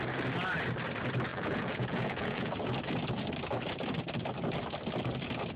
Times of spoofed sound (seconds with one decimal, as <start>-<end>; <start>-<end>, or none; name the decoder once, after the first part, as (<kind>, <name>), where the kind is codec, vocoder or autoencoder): 1.3-2.5 (vocoder, Vocos)

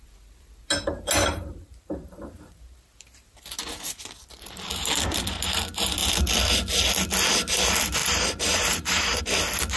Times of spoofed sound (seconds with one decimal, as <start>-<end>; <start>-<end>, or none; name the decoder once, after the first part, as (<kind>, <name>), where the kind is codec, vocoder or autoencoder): 1.2-2.6 (vocoder, BigVGAN v2); 8.0-9.2

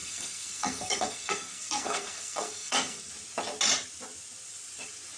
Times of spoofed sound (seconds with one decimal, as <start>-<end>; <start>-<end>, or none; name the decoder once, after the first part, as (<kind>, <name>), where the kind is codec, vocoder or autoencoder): 0.0-3.1 (codec, SNAC)

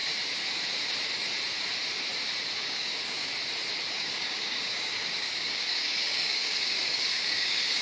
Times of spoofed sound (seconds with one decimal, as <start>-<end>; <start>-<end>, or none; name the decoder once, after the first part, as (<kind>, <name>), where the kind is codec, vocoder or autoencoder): 2.6-3.3 (codec, DAC); 3.9-7.8

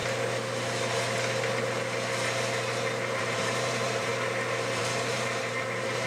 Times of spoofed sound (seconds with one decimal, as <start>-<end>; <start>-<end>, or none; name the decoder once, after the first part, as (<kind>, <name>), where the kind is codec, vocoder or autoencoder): 3.2-4.1 (vocoder, BigVGAN v2); 4.8-6.1

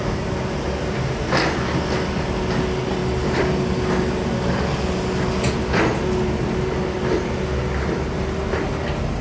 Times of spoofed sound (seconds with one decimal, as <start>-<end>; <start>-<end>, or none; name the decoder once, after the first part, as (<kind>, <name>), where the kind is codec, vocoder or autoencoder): none

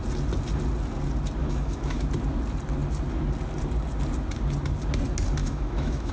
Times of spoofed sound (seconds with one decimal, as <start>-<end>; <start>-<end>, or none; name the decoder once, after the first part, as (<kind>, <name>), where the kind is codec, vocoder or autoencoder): 1.4-2.0 (autoencoder, DAC-VAE); 5.4-6.1

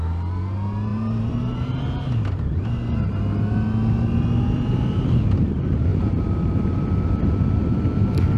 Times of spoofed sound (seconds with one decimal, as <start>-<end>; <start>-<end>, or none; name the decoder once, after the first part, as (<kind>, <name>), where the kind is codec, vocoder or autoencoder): 0.9-1.8 (vocoder, BigVGAN v2); 5.9-6.8